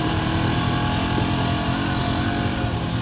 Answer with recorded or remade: recorded